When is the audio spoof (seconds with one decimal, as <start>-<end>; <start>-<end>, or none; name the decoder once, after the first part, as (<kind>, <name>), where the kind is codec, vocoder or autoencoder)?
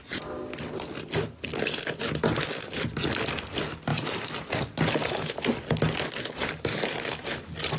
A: 3.9-5.3 (vocoder, BigVGAN v2)